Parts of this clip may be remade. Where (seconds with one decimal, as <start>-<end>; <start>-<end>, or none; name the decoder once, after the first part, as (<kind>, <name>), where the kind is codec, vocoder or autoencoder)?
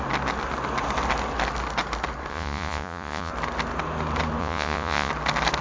2.3-3.3 (vocoder, Vocos); 4.4-5.1